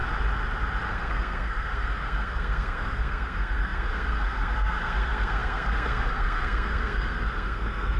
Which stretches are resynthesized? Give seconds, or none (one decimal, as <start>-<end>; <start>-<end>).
0.9-8.0